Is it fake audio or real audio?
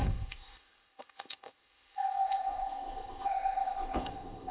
fake